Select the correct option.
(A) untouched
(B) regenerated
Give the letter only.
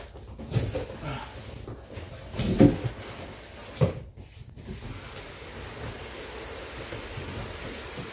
A